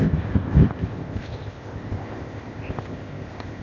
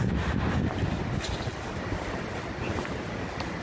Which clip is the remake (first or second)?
first